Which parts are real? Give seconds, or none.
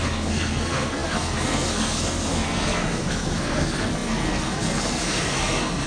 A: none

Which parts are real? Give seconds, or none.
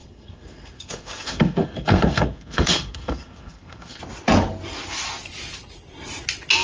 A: 4.0-6.6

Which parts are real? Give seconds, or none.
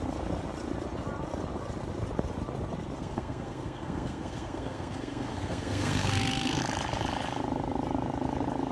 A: 0.0-3.0; 6.6-8.7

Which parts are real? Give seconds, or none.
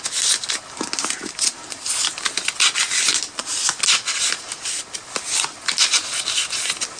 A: 0.0-7.0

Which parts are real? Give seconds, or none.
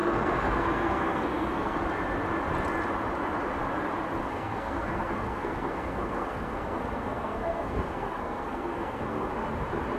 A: 1.8-4.2; 9.3-10.0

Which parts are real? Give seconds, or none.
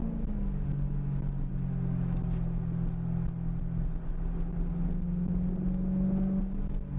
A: 0.0-7.0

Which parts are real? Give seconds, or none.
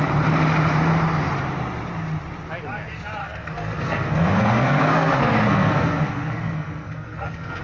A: 0.0-3.2